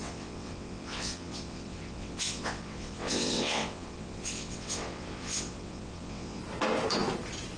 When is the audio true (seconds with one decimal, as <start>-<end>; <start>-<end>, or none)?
6.4-7.6